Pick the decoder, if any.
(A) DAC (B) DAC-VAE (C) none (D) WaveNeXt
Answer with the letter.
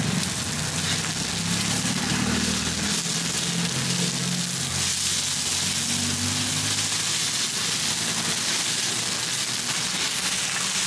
C